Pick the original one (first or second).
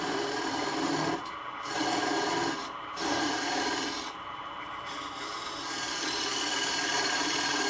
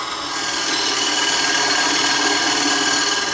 second